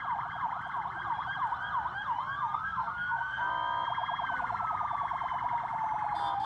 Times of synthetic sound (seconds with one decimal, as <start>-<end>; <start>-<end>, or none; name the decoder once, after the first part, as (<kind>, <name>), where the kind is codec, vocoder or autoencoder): 2.5-3.5 (codec, SNAC)